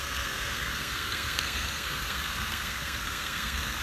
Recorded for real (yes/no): no